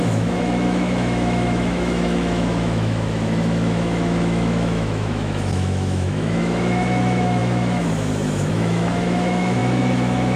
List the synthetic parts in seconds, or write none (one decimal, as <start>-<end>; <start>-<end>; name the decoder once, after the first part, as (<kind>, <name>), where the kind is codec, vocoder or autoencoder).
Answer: 0.0-10.4 (autoencoder, DAC-VAE)